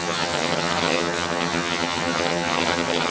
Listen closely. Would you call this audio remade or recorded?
remade